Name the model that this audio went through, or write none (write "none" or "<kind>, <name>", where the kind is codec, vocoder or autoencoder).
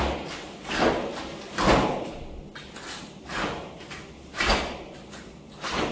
none